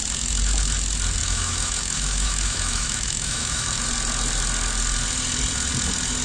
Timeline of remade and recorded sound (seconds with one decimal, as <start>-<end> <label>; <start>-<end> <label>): 0.0-1.2 recorded; 1.2-3.8 remade; 3.8-6.2 recorded